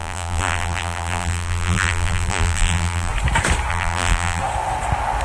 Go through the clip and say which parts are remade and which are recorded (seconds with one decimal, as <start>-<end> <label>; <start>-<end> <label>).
0.0-3.1 remade; 3.1-3.7 recorded; 3.7-4.4 remade; 4.4-5.2 recorded